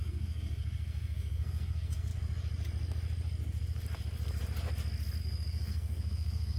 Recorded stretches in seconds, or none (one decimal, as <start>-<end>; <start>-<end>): 2.1-5.2